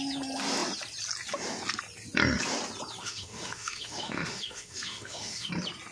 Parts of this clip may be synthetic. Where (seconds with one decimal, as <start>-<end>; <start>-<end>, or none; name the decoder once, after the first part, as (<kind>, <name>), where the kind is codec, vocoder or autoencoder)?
3.0-5.5 (autoencoder, DAC-VAE)